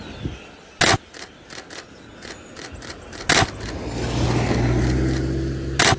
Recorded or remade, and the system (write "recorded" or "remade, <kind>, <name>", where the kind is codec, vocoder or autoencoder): recorded